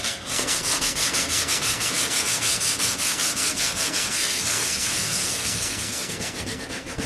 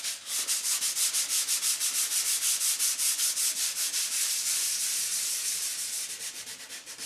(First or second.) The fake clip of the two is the first